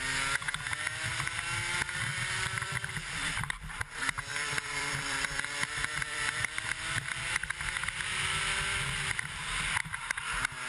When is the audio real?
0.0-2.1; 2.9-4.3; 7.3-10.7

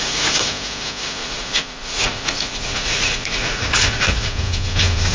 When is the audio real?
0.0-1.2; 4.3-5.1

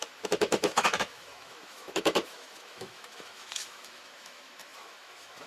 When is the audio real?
none